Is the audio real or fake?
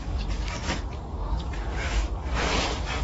fake